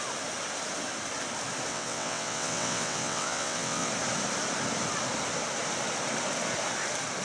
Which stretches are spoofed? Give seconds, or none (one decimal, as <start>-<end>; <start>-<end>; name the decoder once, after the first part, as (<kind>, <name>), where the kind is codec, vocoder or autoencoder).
1.7-3.9 (vocoder, WaveNeXt)